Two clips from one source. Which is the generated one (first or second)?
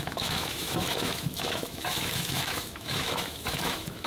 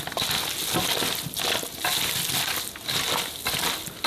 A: first